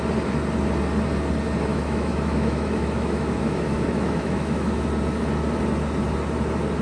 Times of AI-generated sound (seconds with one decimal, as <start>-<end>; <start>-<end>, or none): 1.7-4.9